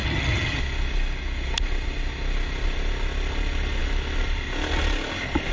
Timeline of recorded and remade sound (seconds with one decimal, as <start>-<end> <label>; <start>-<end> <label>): 0.0-0.6 remade; 0.6-5.5 recorded